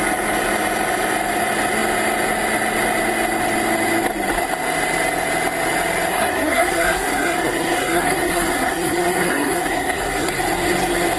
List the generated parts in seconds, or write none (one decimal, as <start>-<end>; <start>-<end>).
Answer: 6.1-10.3